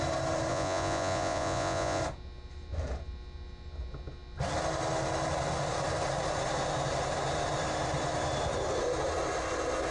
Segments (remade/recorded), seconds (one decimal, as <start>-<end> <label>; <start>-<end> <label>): 0.0-0.5 recorded; 0.5-2.0 remade; 2.0-9.9 recorded